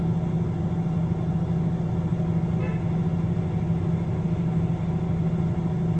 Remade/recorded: recorded